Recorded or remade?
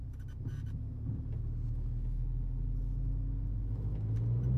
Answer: recorded